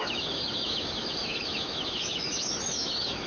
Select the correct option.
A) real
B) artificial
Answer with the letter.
B